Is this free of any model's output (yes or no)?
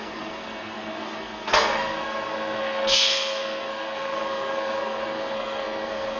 no